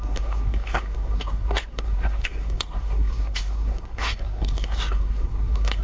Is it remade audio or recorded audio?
remade